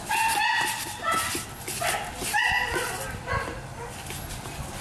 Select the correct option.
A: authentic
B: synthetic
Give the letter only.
A